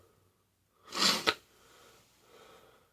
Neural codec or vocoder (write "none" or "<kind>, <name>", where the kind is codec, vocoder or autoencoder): none